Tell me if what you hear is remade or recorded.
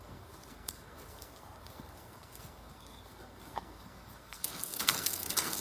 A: remade